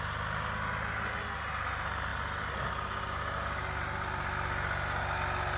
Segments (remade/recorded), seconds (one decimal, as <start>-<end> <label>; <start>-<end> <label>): 0.0-5.6 recorded